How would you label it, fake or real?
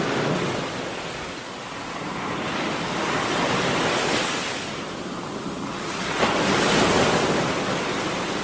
real